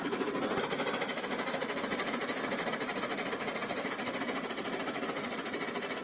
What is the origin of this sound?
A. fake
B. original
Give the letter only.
B